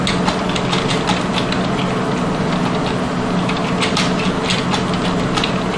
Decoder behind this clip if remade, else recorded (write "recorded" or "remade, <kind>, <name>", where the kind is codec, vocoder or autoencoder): recorded